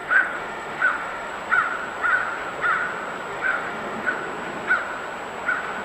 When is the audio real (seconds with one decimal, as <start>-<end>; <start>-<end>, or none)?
1.3-3.3; 4.1-5.8